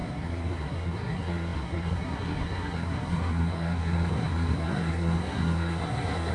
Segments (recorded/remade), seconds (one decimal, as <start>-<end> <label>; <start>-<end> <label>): 0.0-6.3 remade

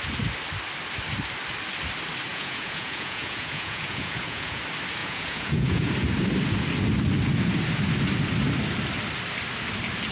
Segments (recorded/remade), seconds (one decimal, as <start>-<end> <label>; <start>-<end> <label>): 0.0-2.3 recorded; 2.3-4.6 remade; 4.6-5.0 recorded; 5.0-5.9 remade; 5.9-10.1 recorded

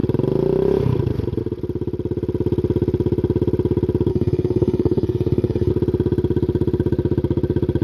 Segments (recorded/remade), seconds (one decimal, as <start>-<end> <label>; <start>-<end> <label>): 0.0-4.1 recorded; 4.1-5.7 remade; 5.7-7.8 recorded

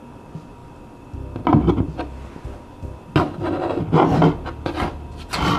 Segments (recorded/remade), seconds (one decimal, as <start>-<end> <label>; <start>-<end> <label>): 0.0-5.6 recorded

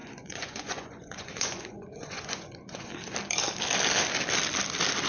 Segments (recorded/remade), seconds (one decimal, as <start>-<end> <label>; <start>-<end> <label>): 0.0-2.9 remade; 2.9-5.1 recorded

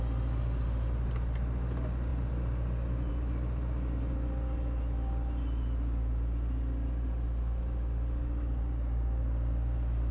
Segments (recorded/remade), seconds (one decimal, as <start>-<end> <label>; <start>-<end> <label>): 0.0-10.1 recorded

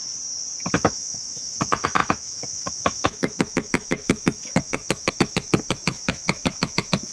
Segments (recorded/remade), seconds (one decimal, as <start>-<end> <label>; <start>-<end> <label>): 0.0-0.7 recorded; 0.7-7.1 remade

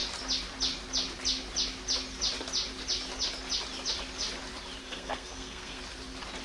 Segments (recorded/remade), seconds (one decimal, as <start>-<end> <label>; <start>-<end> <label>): 0.0-4.8 recorded; 4.8-5.8 remade; 5.8-6.4 recorded